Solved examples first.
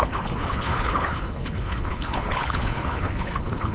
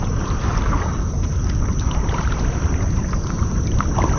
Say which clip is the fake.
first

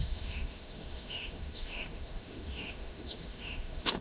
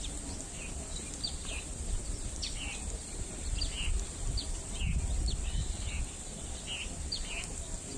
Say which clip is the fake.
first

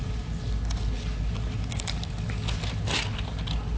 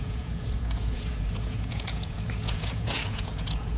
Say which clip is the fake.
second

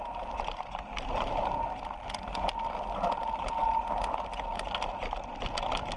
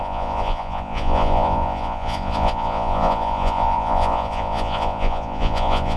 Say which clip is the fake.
second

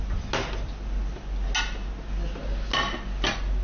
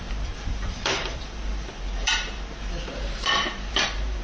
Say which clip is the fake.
second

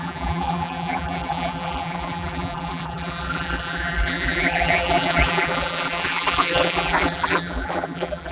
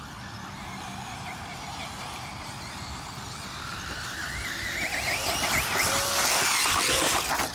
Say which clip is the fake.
first